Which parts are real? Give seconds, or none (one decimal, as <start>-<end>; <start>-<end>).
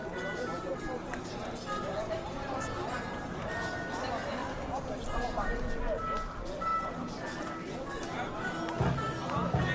3.4-4.4; 5.8-6.7; 8.1-9.7